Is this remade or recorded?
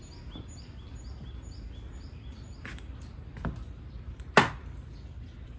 recorded